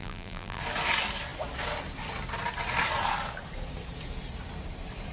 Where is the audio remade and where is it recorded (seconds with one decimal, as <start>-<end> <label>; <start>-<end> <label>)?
0.0-0.6 remade; 0.6-5.1 recorded